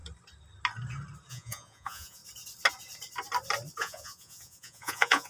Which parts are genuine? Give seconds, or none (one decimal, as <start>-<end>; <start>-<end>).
0.0-1.3; 2.2-3.8